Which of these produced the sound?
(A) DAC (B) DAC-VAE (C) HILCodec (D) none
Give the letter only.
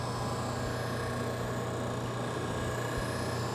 D